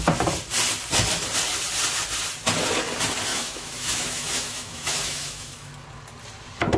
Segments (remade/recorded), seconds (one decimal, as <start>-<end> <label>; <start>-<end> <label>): 0.0-3.3 recorded; 3.3-5.7 remade; 5.7-6.8 recorded